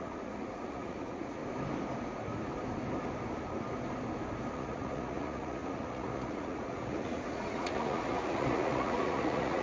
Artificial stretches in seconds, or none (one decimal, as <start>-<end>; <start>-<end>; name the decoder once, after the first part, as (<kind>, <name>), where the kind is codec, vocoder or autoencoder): 0.0-1.4 (vocoder, Vocos); 4.5-9.6